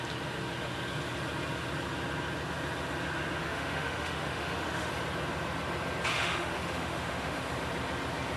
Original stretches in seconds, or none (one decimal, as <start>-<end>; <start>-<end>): 0.0-3.4; 4.9-6.1; 7.4-8.4